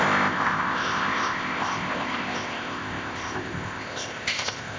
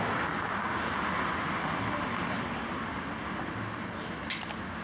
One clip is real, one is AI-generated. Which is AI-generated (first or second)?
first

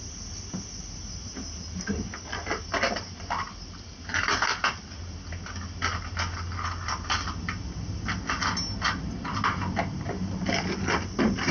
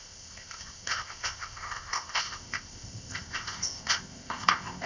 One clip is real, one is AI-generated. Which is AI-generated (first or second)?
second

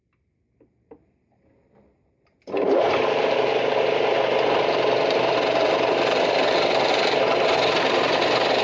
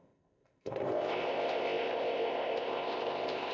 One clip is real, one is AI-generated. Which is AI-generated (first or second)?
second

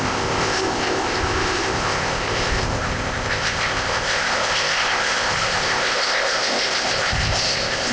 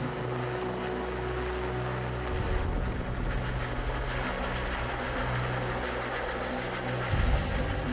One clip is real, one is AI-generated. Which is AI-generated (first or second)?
first